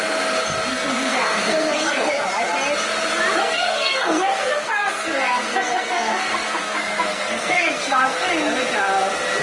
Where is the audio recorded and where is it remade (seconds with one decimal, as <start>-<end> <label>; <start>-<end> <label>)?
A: 0.0-0.7 recorded; 0.7-2.1 remade; 2.1-3.4 recorded; 3.4-8.3 remade; 8.3-9.4 recorded